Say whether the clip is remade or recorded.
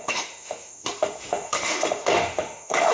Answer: remade